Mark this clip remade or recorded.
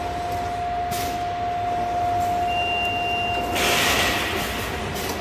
recorded